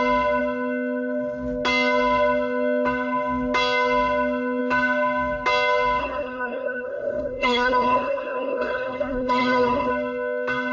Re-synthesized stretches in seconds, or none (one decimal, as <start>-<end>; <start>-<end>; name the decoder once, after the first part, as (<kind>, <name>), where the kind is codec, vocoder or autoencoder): 6.0-9.9 (codec, SNAC)